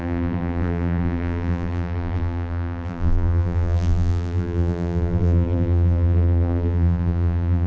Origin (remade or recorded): remade